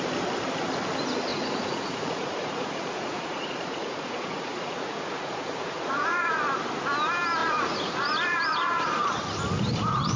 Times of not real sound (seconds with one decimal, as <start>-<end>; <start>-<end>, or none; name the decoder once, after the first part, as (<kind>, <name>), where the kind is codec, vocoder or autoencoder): 1.3-6.4 (vocoder, Vocos); 7.4-9.4